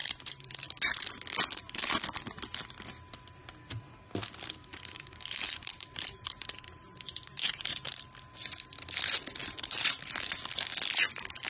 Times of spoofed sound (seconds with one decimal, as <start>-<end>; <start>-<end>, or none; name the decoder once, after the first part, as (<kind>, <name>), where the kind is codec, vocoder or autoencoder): 0.0-0.5 (vocoder, BigVGAN v2); 4.7-8.0; 9.4-9.9